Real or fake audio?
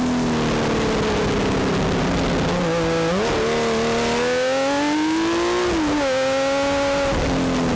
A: real